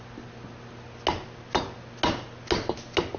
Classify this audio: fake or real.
real